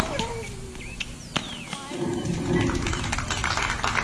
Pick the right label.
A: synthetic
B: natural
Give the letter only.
B